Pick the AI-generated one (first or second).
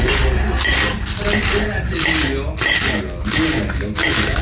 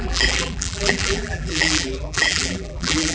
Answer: second